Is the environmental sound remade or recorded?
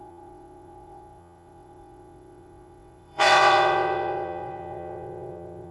remade